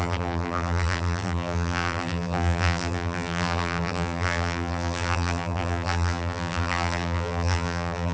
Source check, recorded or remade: remade